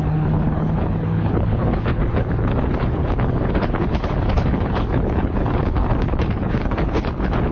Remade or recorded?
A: remade